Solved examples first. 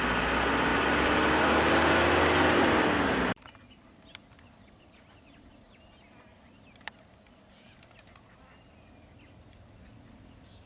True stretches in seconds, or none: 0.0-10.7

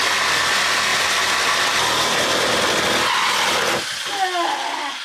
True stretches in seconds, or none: 0.0-5.0

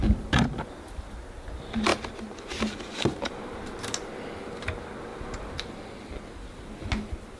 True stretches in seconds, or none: 0.5-1.9; 3.7-5.1; 6.1-7.4

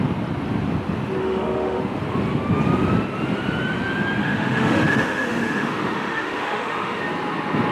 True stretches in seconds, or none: 0.0-1.2; 1.8-4.2; 7.0-7.7